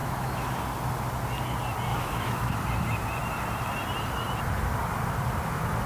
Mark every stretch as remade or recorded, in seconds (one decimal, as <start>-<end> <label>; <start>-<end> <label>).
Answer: 0.0-0.6 remade; 0.6-1.9 recorded; 1.9-2.5 remade; 2.5-5.9 recorded